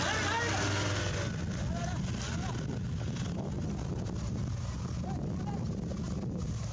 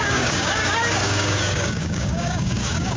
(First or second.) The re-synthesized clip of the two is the second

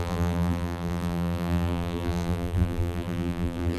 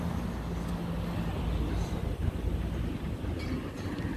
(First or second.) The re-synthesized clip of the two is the first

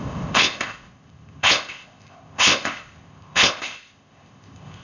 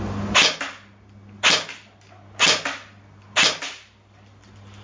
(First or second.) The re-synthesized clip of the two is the first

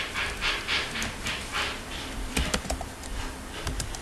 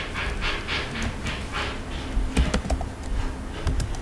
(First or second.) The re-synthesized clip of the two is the first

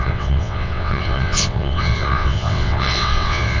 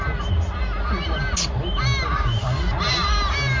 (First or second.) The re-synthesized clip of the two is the first